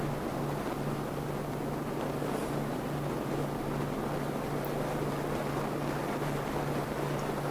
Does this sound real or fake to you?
real